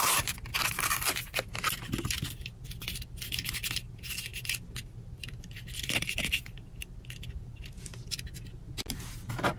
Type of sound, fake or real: real